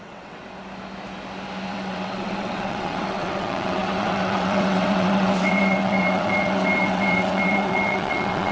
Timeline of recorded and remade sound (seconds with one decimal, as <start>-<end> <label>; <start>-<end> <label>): 0.0-0.4 remade; 0.4-1.7 recorded; 1.7-8.5 remade